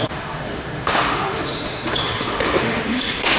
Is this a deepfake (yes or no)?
yes